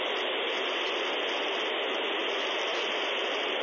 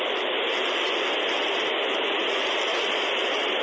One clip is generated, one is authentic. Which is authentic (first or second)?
first